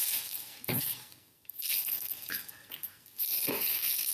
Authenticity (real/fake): fake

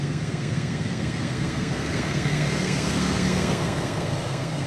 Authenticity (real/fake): fake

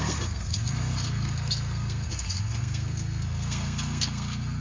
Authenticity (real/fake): fake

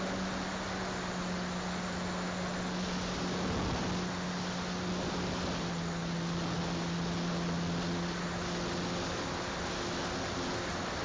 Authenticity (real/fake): real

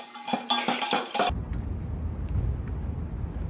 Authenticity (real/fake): real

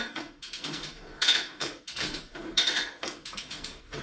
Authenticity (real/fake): fake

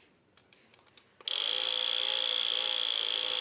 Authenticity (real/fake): real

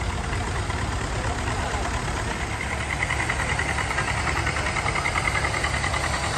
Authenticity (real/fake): real